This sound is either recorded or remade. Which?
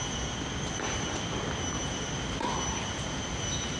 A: recorded